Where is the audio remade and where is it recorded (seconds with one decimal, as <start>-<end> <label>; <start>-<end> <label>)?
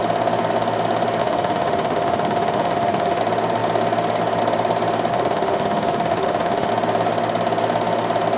0.0-1.2 recorded; 1.2-3.2 remade; 3.2-5.1 recorded; 5.1-6.7 remade; 6.7-8.4 recorded